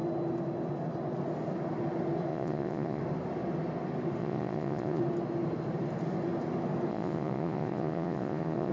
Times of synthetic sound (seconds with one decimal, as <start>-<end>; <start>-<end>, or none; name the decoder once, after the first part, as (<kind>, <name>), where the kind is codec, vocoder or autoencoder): 2.3-3.0 (vocoder, Vocos); 4.2-5.0; 6.9-8.7